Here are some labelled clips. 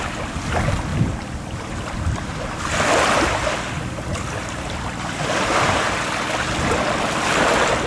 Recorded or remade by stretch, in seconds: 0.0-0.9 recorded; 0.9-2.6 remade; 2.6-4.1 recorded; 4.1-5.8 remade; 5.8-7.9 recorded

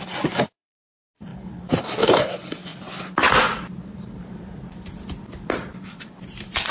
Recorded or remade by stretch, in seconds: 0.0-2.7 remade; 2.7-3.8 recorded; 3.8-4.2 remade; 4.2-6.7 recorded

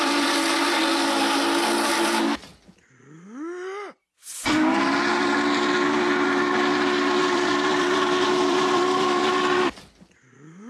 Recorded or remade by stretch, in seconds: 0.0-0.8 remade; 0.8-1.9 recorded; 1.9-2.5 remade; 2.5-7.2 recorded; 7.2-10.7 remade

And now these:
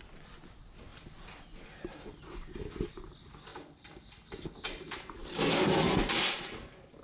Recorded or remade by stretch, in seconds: 0.0-7.0 recorded

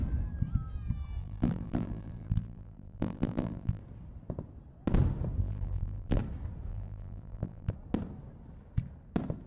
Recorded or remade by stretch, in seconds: 0.0-1.2 recorded; 1.2-3.8 remade; 3.8-5.4 recorded; 5.4-6.2 remade; 6.2-6.7 recorded; 6.7-7.7 remade; 7.7-9.5 recorded

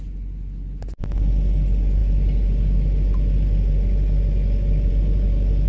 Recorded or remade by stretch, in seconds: 0.0-5.7 recorded